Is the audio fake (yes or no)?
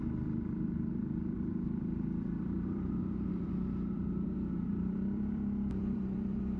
yes